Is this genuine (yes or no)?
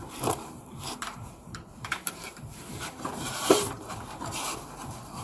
no